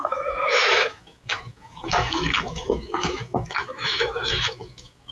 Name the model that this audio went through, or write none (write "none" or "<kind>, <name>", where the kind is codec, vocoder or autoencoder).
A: autoencoder, DAC-VAE